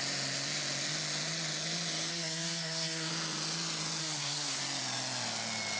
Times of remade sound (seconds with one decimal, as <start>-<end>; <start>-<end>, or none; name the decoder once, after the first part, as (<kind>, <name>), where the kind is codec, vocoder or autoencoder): 2.1-3.1 (codec, SNAC); 4.0-4.6